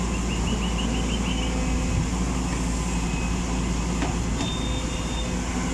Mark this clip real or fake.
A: real